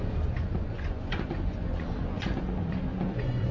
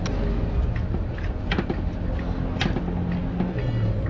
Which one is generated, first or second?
first